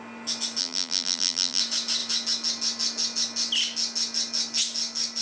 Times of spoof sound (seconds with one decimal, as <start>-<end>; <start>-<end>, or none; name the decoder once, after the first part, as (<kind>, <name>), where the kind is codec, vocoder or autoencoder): 0.6-1.6 (vocoder, BigVGAN v2)